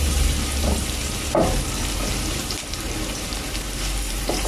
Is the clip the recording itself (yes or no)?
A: no